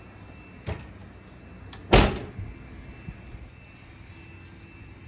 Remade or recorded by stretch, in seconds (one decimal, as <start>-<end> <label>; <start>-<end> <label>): 0.0-5.1 recorded